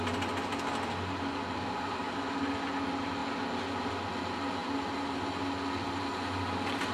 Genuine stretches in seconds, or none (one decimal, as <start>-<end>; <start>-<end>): 0.0-6.9